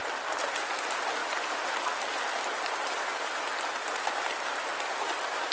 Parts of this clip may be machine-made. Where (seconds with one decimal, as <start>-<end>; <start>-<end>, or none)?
none

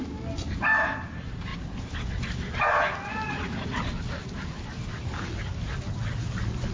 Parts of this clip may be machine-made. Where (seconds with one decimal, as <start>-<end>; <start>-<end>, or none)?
none

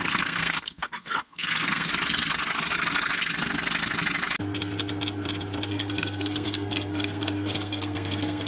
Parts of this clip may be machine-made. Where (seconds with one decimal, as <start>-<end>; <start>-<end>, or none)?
0.0-1.9; 5.7-8.5

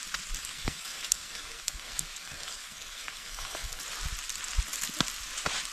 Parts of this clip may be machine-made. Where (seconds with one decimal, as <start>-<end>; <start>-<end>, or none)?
0.4-3.8

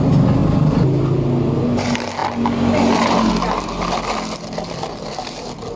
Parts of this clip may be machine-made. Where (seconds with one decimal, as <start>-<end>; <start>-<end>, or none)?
none

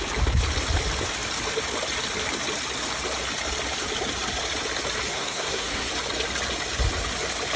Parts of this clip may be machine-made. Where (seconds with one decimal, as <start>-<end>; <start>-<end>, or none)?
5.1-5.9

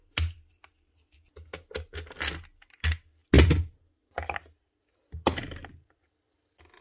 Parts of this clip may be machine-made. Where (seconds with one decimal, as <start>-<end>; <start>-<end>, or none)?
none